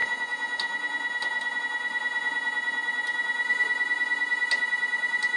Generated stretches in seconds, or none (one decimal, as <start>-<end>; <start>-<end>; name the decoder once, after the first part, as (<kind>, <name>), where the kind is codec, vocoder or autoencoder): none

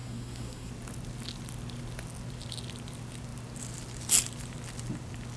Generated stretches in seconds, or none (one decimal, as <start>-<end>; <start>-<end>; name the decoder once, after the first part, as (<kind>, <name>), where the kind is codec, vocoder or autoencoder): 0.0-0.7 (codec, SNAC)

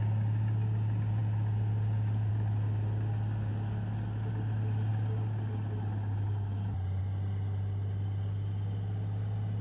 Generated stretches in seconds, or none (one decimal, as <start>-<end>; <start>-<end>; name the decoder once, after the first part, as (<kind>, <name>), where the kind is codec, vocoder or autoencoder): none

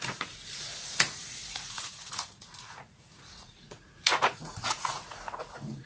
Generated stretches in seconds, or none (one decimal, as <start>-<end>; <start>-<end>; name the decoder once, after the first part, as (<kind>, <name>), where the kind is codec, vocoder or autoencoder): 0.0-5.9 (vocoder, Vocos)